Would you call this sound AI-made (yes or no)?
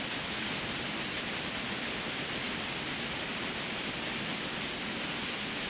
no